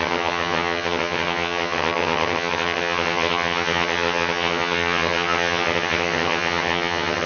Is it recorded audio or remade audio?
remade